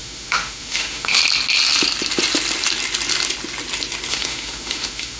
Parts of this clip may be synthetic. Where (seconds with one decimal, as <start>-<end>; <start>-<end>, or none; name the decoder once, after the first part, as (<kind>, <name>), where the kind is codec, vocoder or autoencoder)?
0.0-1.2 (autoencoder, DAC-VAE); 4.1-5.2